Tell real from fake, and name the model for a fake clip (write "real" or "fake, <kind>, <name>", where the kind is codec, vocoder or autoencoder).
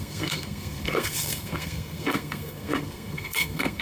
fake, codec, SNAC